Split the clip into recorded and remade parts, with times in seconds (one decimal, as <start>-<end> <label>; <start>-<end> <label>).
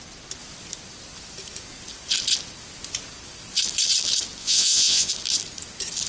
0.0-4.4 recorded; 4.4-5.1 remade; 5.1-6.1 recorded